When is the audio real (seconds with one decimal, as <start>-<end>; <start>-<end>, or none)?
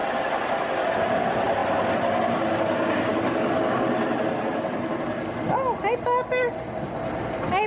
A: 0.0-7.7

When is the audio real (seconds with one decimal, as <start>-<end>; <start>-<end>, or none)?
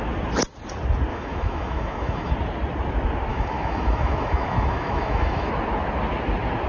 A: 0.0-1.1; 2.3-3.3; 5.5-6.7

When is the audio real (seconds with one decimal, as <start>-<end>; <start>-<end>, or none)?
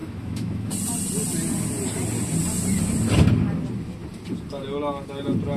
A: 0.7-5.6